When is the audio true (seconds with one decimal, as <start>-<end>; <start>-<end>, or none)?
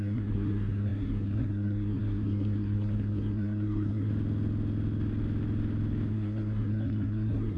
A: 4.1-6.1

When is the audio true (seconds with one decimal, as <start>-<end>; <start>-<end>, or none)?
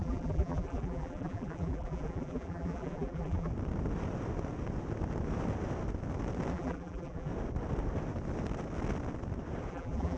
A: 3.5-6.5; 7.3-9.7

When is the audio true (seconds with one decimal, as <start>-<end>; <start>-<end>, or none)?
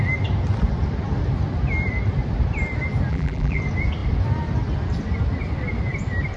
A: 0.0-3.1; 3.6-6.4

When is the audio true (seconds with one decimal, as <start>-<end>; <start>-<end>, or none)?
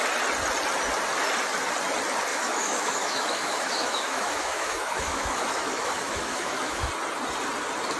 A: 0.0-2.3; 6.9-8.0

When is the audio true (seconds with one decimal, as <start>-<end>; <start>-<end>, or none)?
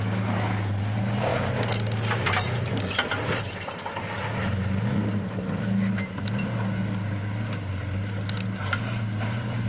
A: 0.0-9.7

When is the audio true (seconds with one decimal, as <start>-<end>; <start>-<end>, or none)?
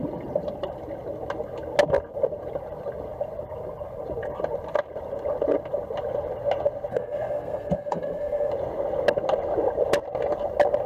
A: 0.0-6.9; 8.5-10.9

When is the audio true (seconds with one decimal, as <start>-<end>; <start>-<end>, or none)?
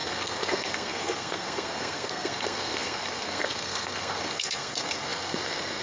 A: none